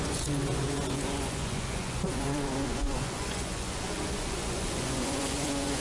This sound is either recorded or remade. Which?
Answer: remade